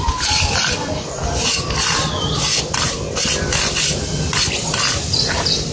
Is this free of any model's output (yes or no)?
yes